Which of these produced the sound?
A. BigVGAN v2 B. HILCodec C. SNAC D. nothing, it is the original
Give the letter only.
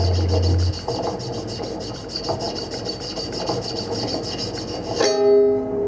D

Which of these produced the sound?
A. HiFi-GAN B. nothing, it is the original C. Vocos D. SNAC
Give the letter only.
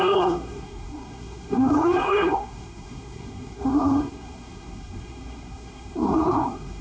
D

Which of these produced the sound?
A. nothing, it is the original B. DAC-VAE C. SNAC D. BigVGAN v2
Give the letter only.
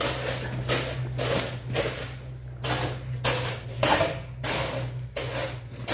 A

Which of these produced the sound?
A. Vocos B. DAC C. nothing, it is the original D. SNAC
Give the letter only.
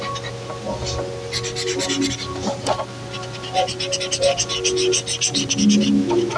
C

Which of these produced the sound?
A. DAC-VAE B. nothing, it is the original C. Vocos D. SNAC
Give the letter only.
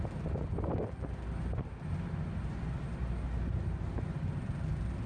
B